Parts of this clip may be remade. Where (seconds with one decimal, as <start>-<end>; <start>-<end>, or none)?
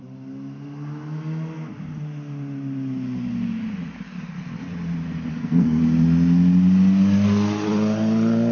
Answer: 5.3-5.8